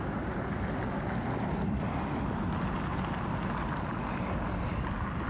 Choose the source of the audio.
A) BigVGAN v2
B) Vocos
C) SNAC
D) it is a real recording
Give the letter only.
D